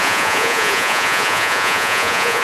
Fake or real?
fake